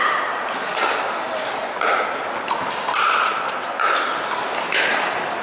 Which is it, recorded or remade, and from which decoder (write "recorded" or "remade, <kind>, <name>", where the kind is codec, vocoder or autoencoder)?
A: recorded